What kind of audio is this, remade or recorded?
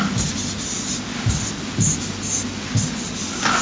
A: recorded